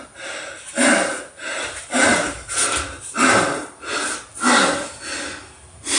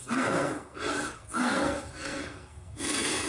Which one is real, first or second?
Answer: first